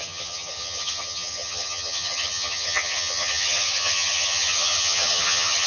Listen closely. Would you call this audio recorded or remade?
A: remade